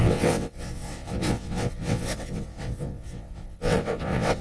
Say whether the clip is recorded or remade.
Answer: remade